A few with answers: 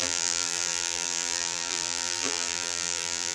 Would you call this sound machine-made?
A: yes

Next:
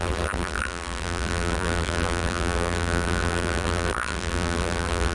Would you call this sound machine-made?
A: yes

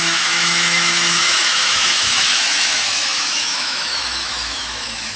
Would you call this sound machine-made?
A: yes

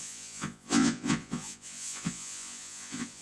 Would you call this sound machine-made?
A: yes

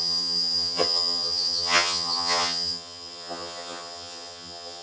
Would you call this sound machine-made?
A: yes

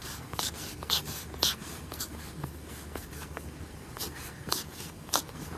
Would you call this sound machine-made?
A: yes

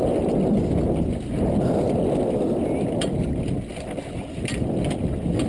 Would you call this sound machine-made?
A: no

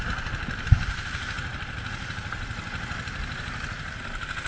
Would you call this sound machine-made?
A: no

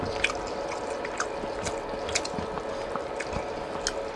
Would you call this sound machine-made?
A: no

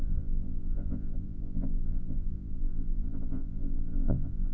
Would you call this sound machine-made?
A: yes